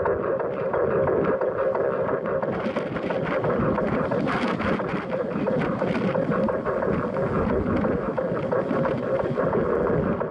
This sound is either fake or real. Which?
real